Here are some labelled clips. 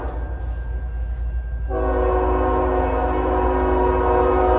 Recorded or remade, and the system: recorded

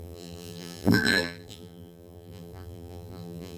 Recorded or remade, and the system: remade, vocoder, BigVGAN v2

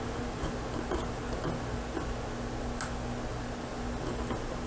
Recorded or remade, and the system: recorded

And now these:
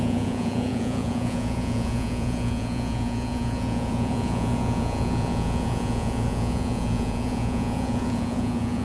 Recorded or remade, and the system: remade, vocoder, Vocos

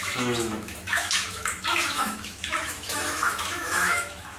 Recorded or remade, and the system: remade, autoencoder, DAC-VAE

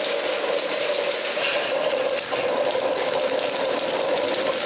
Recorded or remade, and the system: remade, vocoder, BigVGAN v2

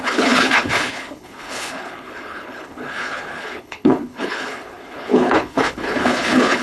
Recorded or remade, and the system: remade, codec, HILCodec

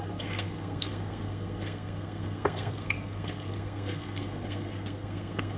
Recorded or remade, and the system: remade, codec, SNAC